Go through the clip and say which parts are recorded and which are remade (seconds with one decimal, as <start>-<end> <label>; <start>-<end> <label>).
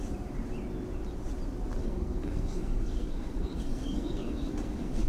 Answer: 0.0-1.8 recorded; 1.8-5.1 remade